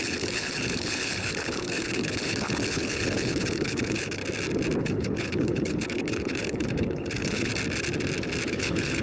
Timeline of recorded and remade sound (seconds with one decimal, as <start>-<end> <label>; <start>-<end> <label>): 0.0-4.2 remade; 4.2-4.8 recorded; 4.8-7.5 remade; 7.5-8.5 recorded; 8.5-9.0 remade